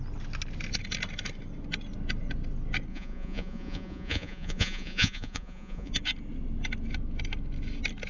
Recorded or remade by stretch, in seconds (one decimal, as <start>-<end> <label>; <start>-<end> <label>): 0.0-2.9 recorded; 2.9-5.9 remade; 5.9-8.1 recorded